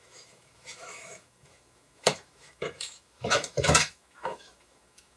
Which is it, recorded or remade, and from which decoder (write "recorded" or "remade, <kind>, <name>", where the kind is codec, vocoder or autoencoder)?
remade, autoencoder, DAC-VAE